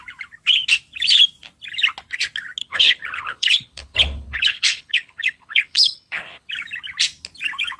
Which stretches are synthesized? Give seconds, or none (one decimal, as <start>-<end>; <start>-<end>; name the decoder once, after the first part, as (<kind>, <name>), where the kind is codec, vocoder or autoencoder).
2.6-6.5 (codec, HILCodec)

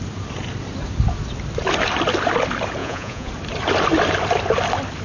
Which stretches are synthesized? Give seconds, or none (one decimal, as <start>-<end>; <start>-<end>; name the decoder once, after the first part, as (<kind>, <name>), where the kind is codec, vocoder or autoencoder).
2.8-3.3 (vocoder, Vocos)

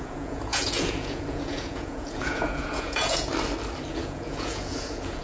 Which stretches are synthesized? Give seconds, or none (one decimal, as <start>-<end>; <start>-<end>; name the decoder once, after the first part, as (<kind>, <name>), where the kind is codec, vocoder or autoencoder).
0.0-3.3 (vocoder, Vocos); 3.9-5.2

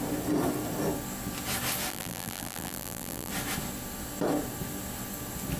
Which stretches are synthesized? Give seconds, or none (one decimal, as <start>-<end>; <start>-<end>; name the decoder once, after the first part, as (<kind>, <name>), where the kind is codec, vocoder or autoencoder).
1.9-3.3 (vocoder, BigVGAN v2)

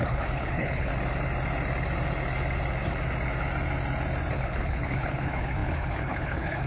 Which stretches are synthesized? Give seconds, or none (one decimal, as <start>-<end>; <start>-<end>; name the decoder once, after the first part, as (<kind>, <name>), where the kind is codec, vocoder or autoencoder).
0.0-0.9 (codec, HILCodec); 4.3-6.7

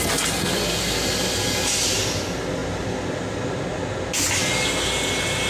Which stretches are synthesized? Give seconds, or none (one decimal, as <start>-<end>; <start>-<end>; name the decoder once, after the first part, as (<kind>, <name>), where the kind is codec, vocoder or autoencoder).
none

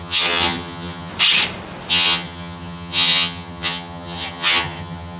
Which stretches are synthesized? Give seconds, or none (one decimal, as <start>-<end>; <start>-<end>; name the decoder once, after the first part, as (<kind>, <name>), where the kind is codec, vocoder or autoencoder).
0.0-1.1 (vocoder, HiFi-GAN); 1.9-5.2